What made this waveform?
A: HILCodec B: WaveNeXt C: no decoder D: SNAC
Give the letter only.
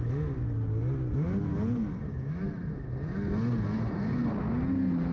C